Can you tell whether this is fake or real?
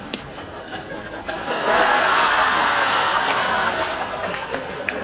fake